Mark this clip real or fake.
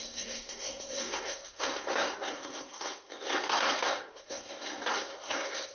fake